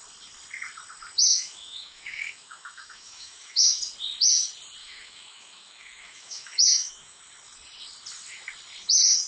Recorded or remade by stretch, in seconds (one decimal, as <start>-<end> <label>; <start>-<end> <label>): 0.0-1.3 recorded; 1.3-3.8 remade; 3.8-4.8 recorded; 4.8-7.2 remade; 7.2-9.3 recorded